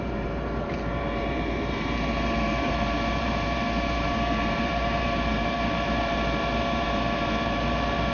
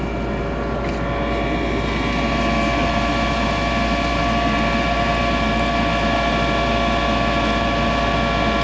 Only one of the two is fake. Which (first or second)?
first